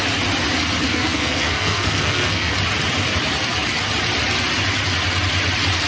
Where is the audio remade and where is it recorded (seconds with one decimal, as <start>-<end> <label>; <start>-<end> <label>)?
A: 0.0-0.9 recorded; 0.9-2.5 remade; 2.5-5.9 recorded